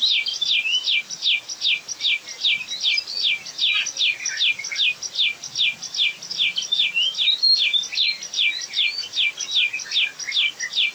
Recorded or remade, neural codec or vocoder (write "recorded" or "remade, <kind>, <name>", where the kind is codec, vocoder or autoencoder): recorded